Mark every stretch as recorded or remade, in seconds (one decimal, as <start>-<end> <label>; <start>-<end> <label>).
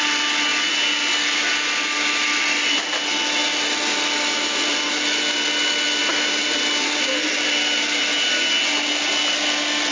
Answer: 0.0-9.9 recorded